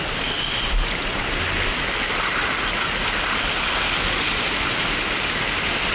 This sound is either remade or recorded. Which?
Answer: recorded